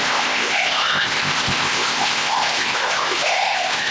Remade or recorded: remade